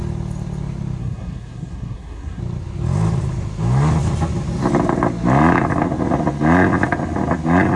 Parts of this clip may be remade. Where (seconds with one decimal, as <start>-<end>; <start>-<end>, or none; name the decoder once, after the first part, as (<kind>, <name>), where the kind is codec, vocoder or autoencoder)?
1.0-2.4 (codec, SNAC)